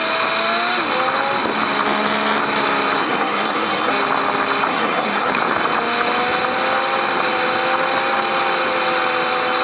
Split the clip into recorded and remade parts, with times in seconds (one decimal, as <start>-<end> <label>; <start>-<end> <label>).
0.0-3.0 recorded; 3.0-3.9 remade; 3.9-4.7 recorded; 4.7-5.3 remade; 5.3-9.6 recorded